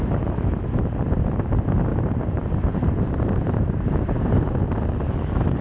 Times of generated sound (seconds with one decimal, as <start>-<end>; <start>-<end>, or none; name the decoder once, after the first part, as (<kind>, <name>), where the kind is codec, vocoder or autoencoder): 1.9-4.6 (vocoder, BigVGAN v2)